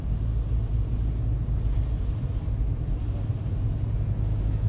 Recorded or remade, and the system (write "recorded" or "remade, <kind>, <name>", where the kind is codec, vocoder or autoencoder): recorded